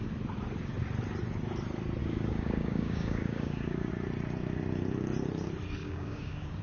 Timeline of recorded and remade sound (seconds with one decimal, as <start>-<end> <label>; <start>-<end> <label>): 0.0-2.0 recorded; 2.0-3.9 remade; 3.9-5.8 recorded; 5.8-6.6 remade